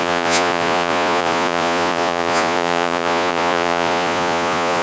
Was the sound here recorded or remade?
remade